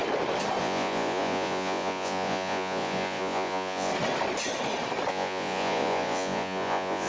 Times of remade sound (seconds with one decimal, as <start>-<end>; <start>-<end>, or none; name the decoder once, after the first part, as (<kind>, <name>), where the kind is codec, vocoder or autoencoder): 0.6-3.9 (vocoder, Vocos); 5.1-7.1